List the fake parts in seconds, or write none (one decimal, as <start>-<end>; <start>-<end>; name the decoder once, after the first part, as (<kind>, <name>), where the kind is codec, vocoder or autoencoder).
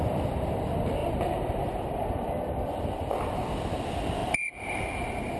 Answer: 4.2-4.8 (vocoder, BigVGAN v2)